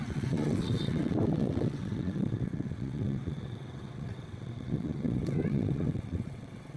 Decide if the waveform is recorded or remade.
remade